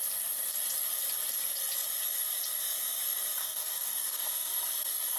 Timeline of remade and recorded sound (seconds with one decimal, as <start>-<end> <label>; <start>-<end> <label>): 0.0-3.4 recorded; 3.4-4.5 remade; 4.5-5.2 recorded